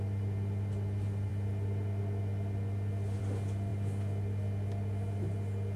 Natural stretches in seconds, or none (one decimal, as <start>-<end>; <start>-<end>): 0.0-5.8

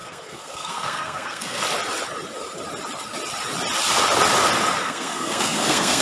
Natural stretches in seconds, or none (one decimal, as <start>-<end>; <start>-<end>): 1.6-4.8

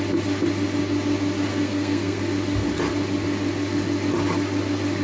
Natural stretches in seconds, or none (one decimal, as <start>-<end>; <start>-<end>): 0.0-1.5; 2.2-5.0

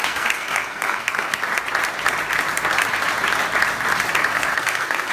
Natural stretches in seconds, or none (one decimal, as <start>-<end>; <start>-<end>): 1.4-4.2

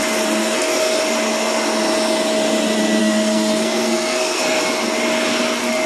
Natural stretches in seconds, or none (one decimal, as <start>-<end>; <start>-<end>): 0.0-0.4; 1.0-3.0; 4.6-5.9

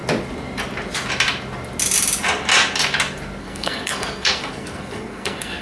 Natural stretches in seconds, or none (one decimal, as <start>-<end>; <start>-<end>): 0.0-3.4

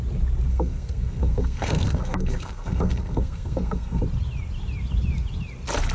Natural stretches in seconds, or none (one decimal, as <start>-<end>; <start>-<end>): 0.0-0.5; 4.0-5.9

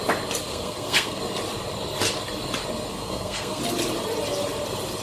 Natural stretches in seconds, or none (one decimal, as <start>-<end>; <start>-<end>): 0.0-0.5; 1.2-2.9; 3.6-5.0